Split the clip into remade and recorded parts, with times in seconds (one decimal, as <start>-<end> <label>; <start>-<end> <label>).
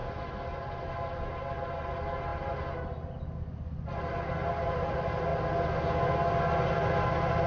0.0-7.5 recorded